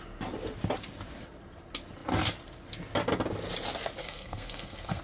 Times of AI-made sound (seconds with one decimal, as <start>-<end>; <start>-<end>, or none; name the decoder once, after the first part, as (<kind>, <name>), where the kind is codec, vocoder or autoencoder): 4.0-5.0 (codec, SNAC)